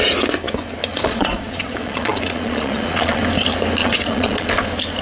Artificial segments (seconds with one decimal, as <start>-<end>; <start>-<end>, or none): 0.9-3.2; 3.8-4.5